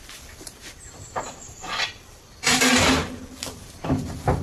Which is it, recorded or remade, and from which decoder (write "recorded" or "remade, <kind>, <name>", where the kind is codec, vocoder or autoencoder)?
remade, vocoder, BigVGAN v2